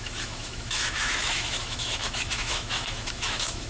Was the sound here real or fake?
fake